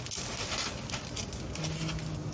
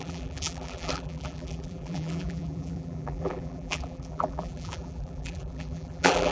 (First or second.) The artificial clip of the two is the second